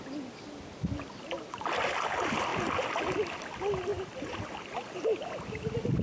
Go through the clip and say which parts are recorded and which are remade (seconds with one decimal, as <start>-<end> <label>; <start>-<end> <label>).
0.0-6.0 recorded